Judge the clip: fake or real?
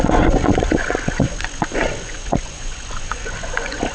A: fake